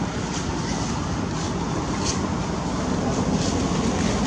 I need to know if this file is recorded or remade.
recorded